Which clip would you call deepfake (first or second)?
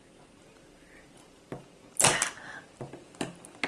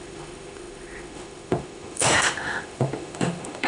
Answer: second